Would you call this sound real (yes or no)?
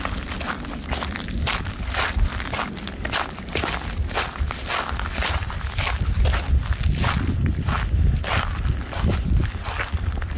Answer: yes